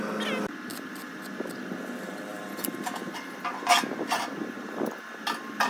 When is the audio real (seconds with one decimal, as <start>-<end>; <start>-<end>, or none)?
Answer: 0.0-0.7; 1.2-2.3; 3.5-5.7